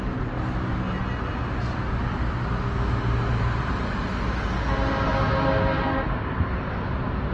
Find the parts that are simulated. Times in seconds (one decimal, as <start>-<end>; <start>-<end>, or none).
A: none